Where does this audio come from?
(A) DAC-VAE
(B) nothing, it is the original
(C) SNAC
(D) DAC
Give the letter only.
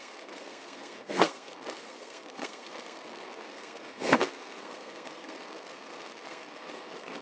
C